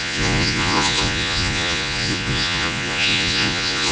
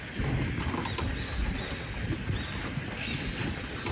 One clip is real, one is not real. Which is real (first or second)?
second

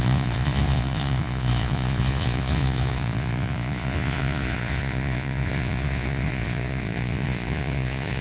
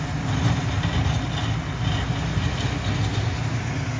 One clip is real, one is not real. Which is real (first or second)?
second